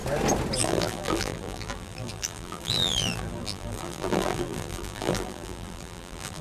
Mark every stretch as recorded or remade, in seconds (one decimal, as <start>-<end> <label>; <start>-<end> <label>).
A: 0.0-0.6 recorded; 0.6-6.4 remade